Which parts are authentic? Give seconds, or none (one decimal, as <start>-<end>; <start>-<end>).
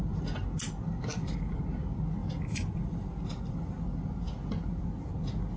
0.0-1.1; 1.6-2.2; 3.8-5.6